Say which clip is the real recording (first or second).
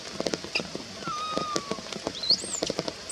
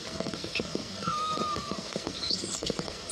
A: first